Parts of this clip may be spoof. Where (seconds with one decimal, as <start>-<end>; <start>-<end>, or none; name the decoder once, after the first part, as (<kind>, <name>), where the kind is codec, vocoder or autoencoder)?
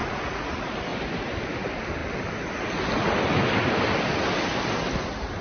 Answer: 0.0-0.5 (vocoder, Vocos)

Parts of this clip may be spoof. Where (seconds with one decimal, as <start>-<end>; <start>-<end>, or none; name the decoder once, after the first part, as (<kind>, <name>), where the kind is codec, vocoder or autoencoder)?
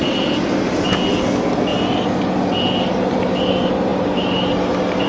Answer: none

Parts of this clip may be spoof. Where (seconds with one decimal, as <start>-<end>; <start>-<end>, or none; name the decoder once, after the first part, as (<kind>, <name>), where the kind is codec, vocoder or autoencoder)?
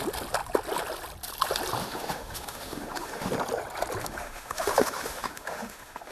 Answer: 1.8-3.3 (autoencoder, DAC-VAE); 4.0-6.1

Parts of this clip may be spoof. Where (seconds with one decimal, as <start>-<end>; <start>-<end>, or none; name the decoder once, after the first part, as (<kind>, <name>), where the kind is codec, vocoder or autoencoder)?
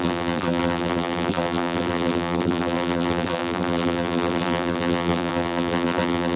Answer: 0.0-6.4 (vocoder, BigVGAN v2)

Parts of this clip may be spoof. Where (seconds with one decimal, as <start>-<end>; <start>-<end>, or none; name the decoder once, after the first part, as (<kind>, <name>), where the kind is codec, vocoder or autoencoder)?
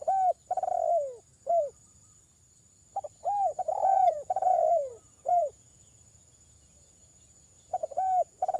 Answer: 3.9-8.6 (vocoder, Vocos)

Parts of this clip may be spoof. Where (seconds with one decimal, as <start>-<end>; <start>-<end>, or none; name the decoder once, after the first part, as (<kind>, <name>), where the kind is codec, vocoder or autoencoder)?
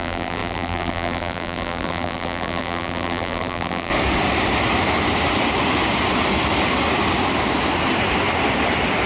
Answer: 0.0-3.9 (vocoder, BigVGAN v2)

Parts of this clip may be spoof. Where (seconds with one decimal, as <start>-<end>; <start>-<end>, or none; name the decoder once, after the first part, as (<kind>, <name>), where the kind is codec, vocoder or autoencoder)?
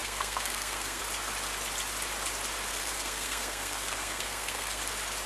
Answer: 0.0-1.0 (codec, SNAC); 2.7-4.8